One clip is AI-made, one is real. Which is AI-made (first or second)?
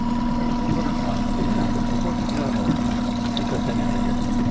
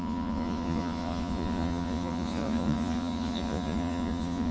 second